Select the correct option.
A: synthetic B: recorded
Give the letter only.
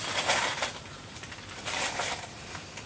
A